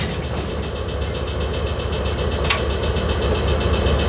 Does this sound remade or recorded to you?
recorded